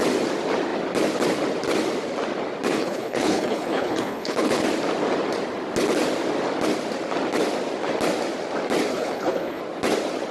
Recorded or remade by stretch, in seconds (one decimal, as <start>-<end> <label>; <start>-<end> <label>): 0.0-2.7 recorded; 2.7-4.6 remade; 4.6-8.9 recorded; 8.9-9.6 remade; 9.6-10.3 recorded